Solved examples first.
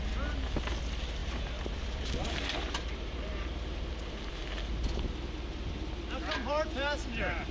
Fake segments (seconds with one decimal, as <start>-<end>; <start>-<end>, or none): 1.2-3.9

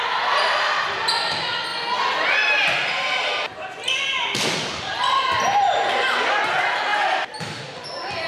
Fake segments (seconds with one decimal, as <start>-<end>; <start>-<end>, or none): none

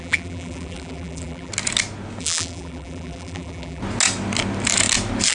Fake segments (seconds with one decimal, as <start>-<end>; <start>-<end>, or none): 0.0-1.5; 2.2-3.8

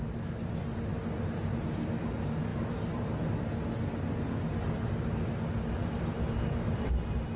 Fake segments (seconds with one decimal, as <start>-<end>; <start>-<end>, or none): 0.9-1.6; 2.5-3.3; 5.8-6.9